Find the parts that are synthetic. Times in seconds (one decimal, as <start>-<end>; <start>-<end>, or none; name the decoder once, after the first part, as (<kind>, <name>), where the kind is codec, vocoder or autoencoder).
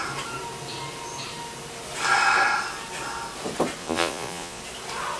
3.8-4.6 (vocoder, Vocos)